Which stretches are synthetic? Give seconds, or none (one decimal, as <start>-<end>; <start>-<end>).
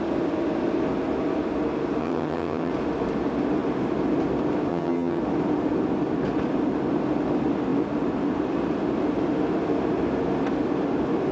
2.0-2.7; 4.7-5.2